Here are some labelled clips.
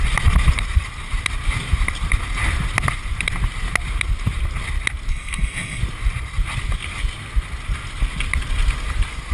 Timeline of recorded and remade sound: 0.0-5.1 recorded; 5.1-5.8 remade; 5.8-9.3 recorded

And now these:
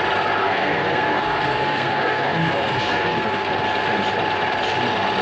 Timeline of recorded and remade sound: 0.0-0.4 recorded; 0.4-3.5 remade; 3.5-5.2 recorded